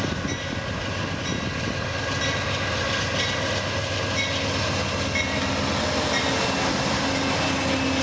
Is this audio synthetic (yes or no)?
no